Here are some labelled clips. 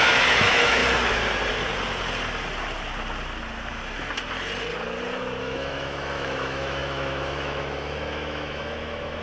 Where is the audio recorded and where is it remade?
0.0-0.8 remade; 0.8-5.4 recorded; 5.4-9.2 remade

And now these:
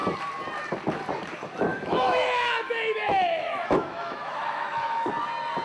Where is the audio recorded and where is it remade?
0.0-1.7 recorded; 1.7-5.1 remade; 5.1-5.6 recorded